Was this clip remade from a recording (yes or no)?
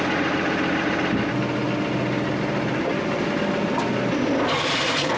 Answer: no